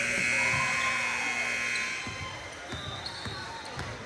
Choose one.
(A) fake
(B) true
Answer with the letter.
B